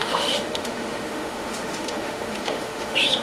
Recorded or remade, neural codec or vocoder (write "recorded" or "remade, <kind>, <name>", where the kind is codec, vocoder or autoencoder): remade, autoencoder, DAC-VAE